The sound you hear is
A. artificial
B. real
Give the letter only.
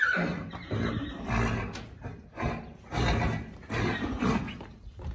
B